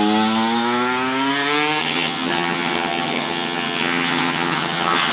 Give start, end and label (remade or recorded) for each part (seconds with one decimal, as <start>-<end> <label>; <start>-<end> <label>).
0.0-1.8 recorded; 1.8-5.1 remade